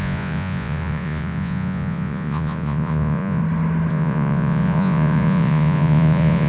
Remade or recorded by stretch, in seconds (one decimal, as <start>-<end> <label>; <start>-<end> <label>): 0.0-3.4 remade; 3.4-3.9 recorded; 3.9-6.5 remade